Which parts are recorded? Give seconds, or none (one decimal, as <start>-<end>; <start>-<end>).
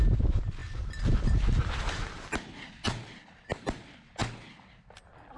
0.0-0.6; 3.8-5.4